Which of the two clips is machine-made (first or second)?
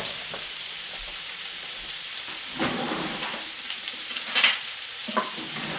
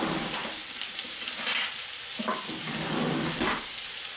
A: first